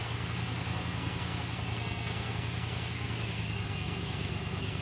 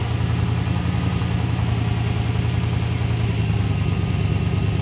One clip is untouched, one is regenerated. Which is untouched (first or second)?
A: second